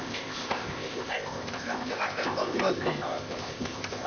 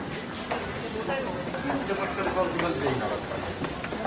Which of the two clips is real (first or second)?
second